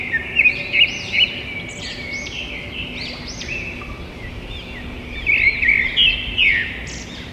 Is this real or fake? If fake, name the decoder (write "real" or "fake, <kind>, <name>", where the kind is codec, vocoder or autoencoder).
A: real